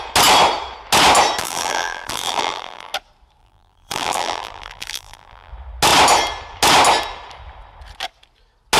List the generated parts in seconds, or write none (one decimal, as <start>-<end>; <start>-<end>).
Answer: 1.4-2.9; 3.4-5.5